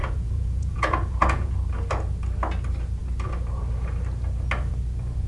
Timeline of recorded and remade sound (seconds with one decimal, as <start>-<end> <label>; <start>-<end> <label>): 0.0-1.5 remade; 1.5-5.3 recorded